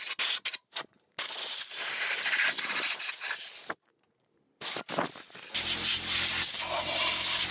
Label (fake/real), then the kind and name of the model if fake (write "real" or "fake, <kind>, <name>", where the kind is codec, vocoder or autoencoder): real